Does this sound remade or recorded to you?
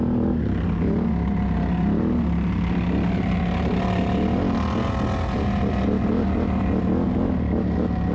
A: recorded